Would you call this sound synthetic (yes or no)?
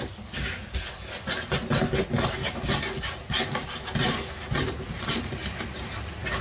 no